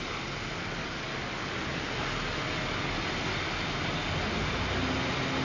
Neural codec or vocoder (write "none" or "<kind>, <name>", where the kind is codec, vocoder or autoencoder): none